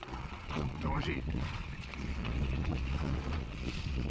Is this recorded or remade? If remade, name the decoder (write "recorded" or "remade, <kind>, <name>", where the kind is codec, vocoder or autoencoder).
remade, vocoder, Vocos